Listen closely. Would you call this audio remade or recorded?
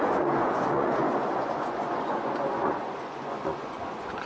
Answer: remade